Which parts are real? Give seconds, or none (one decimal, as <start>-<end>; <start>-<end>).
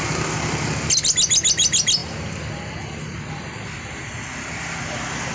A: 0.0-5.3